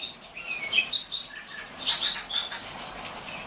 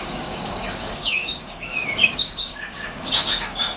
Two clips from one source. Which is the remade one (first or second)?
second